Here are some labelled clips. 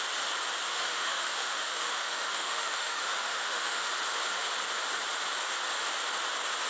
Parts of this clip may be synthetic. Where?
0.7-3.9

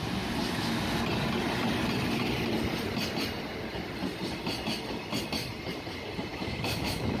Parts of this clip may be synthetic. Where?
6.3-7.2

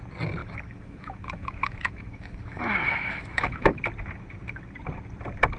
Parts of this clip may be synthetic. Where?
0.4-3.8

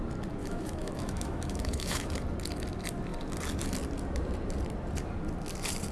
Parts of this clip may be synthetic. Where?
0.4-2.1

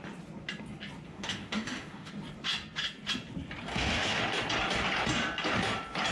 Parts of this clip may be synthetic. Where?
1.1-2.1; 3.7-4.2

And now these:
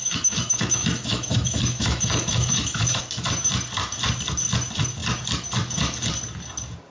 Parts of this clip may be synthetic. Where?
0.0-3.0